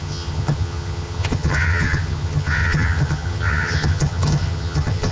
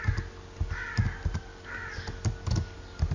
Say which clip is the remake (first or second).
first